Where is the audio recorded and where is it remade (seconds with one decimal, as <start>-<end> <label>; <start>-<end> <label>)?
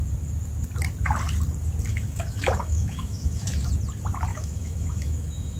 0.0-1.9 recorded; 1.9-3.7 remade; 3.7-4.3 recorded; 4.3-5.6 remade